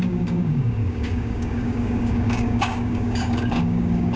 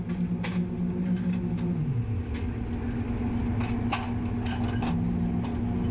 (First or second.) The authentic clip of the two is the second